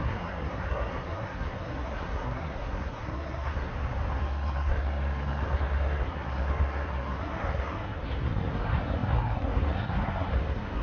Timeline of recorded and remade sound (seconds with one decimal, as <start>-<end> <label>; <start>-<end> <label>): 0.0-3.7 remade; 3.7-4.2 recorded; 4.2-10.8 remade